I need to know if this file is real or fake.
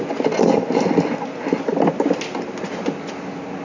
real